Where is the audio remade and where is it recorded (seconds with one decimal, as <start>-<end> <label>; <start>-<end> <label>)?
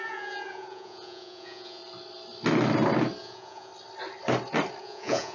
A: 0.0-1.8 remade; 1.8-3.2 recorded; 3.2-3.7 remade; 3.7-4.8 recorded; 4.8-5.3 remade